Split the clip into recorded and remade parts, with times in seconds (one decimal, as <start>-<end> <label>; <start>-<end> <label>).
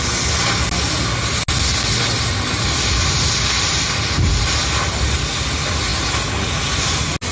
0.0-7.3 recorded